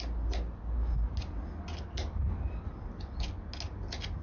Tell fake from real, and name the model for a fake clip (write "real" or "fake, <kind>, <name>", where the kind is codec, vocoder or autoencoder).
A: real